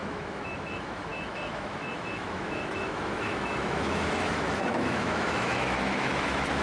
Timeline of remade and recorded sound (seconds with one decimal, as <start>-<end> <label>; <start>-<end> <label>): 0.0-6.6 remade